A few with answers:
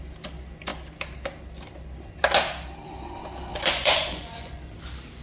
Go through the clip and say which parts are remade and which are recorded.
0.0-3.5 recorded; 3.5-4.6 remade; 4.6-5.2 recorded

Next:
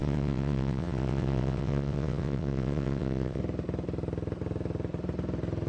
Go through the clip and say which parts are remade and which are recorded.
0.0-3.4 remade; 3.4-5.7 recorded

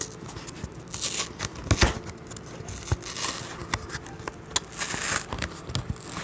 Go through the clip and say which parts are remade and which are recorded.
0.0-6.2 recorded

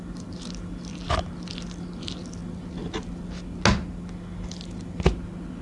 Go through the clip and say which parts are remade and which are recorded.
0.0-5.6 recorded

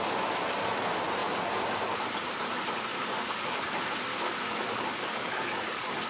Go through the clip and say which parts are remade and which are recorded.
0.0-2.9 recorded; 2.9-3.5 remade; 3.5-4.1 recorded; 4.1-6.1 remade

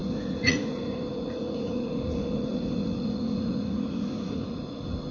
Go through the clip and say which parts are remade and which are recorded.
0.0-5.1 remade

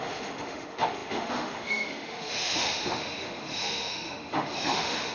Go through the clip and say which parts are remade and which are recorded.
0.0-5.1 remade